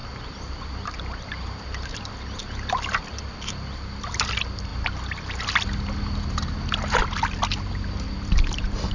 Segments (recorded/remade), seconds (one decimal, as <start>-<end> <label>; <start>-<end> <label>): 0.0-1.9 remade; 1.9-8.9 recorded